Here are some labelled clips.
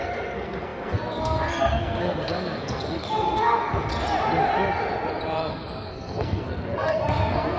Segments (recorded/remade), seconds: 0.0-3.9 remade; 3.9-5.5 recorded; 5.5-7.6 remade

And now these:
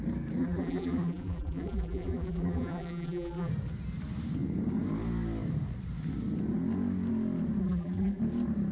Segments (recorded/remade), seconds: 0.0-0.4 recorded; 0.4-3.5 remade; 3.5-7.6 recorded; 7.6-8.2 remade; 8.2-8.7 recorded